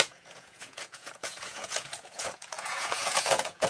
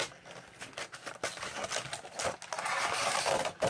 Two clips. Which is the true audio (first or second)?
second